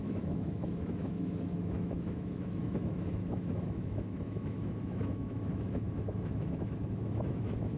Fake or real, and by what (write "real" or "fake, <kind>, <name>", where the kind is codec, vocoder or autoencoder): fake, autoencoder, DAC-VAE